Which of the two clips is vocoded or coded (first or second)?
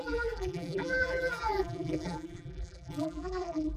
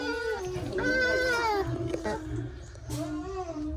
first